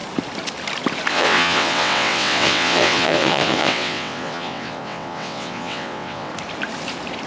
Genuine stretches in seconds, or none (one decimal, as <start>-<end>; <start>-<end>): 0.0-1.1; 6.3-7.3